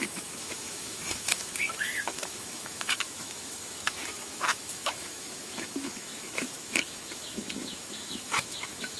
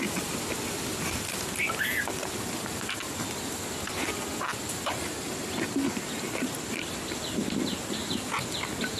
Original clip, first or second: second